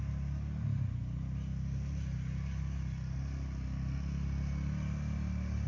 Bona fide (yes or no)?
yes